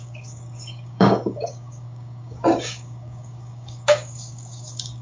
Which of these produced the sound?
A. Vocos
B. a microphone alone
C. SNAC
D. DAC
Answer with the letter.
D